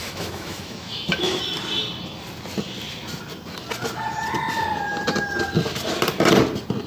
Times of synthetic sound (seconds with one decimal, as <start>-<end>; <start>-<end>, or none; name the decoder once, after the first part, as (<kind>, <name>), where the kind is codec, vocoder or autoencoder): 0.0-1.4 (autoencoder, DAC-VAE)